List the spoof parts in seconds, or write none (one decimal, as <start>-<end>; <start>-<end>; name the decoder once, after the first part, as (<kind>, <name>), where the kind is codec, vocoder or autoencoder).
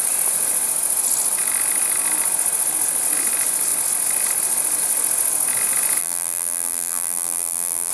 6.0-7.9 (vocoder, BigVGAN v2)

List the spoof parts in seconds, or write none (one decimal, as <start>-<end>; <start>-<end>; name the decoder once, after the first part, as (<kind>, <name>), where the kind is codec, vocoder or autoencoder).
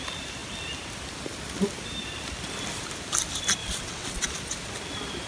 3.6-4.3 (vocoder, WaveNeXt)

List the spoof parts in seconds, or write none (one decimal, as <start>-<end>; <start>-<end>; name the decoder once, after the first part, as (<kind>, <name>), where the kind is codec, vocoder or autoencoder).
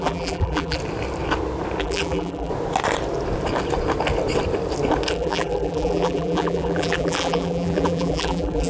0.0-0.8 (vocoder, BigVGAN v2); 1.8-2.5; 5.1-8.7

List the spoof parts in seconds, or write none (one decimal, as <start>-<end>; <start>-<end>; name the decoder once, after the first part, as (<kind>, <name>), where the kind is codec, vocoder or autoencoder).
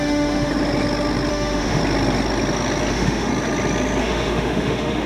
0.0-0.5 (autoencoder, DAC-VAE); 1.3-1.8; 2.9-3.3; 4.0-5.1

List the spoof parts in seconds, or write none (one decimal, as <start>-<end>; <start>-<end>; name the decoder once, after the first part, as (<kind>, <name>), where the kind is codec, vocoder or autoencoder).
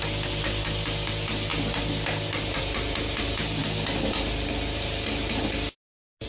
none